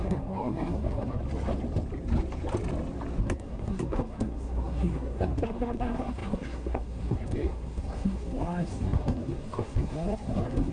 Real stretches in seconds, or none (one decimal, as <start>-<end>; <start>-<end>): 1.2-3.2